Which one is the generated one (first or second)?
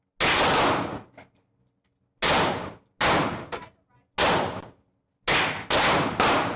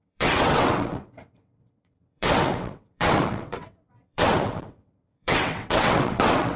second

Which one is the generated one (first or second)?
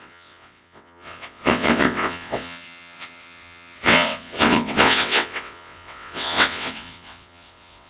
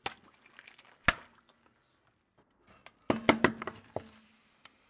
first